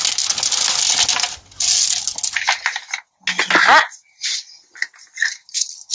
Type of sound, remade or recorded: recorded